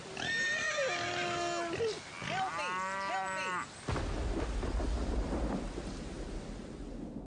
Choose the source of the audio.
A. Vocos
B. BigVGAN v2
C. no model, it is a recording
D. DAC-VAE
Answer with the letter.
C